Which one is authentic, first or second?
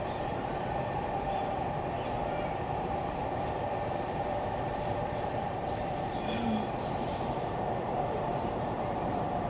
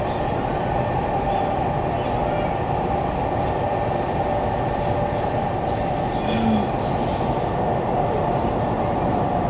second